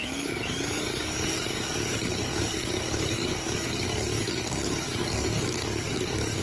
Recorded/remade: remade